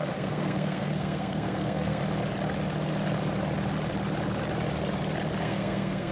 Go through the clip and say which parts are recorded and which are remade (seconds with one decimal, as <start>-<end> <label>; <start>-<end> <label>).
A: 0.0-2.0 remade; 2.0-5.4 recorded; 5.4-6.1 remade